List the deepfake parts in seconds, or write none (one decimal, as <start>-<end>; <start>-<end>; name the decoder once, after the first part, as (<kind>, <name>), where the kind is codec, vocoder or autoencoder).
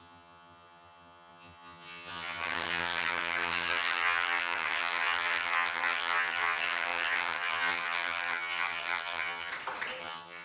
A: 0.0-9.5 (vocoder, HiFi-GAN); 10.0-10.4